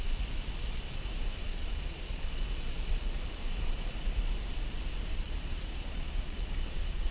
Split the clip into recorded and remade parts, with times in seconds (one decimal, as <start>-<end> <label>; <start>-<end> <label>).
0.0-1.4 recorded; 1.4-2.3 remade; 2.3-5.1 recorded; 5.1-7.1 remade